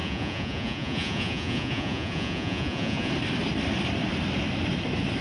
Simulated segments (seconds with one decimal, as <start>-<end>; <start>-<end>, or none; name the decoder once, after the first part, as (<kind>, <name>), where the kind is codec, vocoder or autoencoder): 0.0-3.1 (vocoder, Vocos)